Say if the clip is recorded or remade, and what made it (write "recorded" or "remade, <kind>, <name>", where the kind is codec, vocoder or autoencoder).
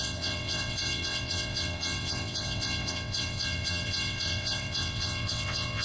remade, vocoder, WaveNeXt